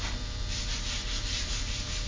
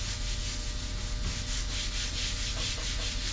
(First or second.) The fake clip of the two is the first